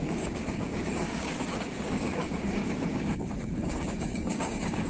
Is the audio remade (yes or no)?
yes